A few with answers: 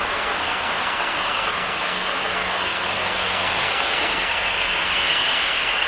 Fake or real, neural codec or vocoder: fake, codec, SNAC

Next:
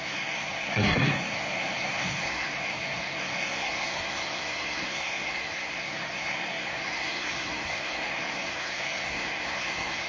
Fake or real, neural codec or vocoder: fake, codec, SNAC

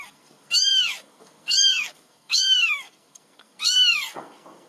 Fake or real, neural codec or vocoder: fake, codec, SNAC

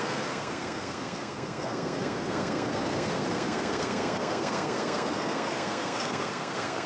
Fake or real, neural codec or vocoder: fake, codec, SNAC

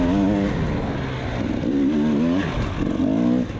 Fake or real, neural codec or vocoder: real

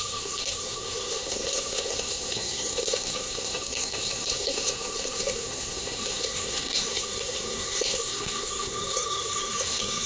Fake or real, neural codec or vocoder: fake, codec, SNAC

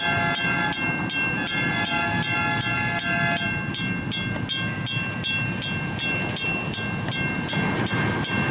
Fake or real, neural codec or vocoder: real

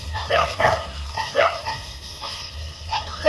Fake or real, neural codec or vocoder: fake, codec, SNAC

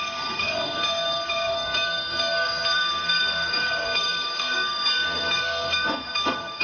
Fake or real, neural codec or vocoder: fake, codec, SNAC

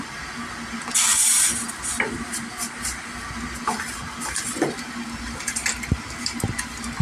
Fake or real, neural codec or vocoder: real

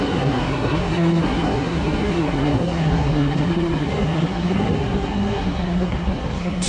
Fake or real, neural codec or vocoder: fake, codec, SNAC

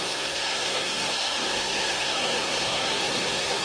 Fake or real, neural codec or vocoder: fake, codec, SNAC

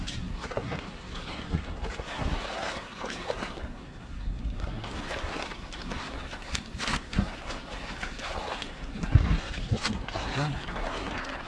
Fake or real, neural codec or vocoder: fake, codec, SNAC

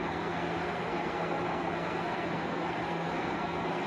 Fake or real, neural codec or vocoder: fake, codec, SNAC